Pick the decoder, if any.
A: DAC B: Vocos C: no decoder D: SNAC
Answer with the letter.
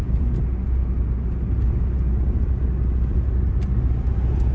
C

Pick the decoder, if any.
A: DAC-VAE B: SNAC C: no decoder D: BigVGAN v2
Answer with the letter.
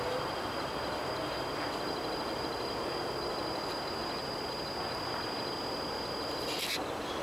C